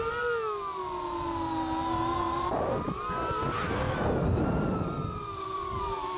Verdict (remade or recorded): recorded